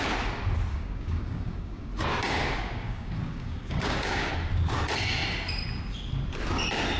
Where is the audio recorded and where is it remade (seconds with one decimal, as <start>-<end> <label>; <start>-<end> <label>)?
0.0-0.7 recorded; 0.7-4.3 remade; 4.3-7.0 recorded